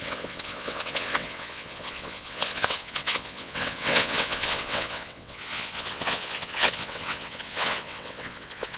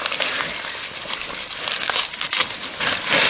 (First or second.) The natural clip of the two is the second